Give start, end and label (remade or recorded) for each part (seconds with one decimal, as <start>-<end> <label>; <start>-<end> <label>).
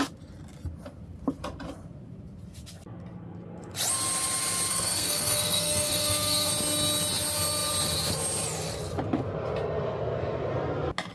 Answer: 0.0-4.7 recorded; 4.7-6.5 remade; 6.5-11.1 recorded